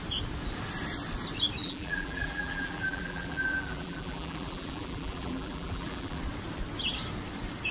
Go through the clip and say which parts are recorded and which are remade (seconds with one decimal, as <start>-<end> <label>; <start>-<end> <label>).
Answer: 0.0-1.6 recorded; 1.6-6.2 remade; 6.2-7.7 recorded